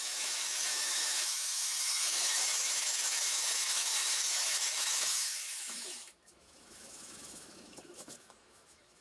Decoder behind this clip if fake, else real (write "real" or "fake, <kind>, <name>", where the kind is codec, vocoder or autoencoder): fake, autoencoder, DAC-VAE